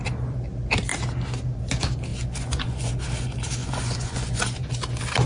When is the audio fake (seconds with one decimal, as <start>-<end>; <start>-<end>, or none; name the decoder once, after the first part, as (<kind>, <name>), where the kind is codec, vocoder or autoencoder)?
2.1-2.9 (vocoder, Vocos); 3.6-4.4